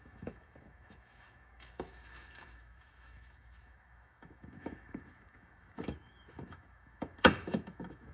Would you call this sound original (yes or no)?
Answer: no